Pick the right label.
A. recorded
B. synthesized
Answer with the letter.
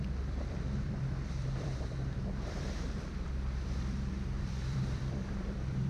B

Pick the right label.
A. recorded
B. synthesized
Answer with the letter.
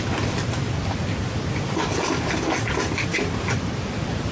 A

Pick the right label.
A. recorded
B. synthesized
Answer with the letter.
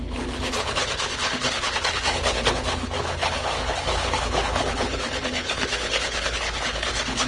B